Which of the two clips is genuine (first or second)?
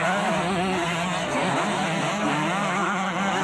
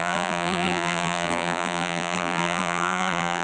first